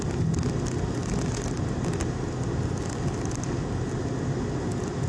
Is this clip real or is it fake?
real